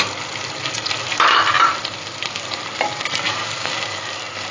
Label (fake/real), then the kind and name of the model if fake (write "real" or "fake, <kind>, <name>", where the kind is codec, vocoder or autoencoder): real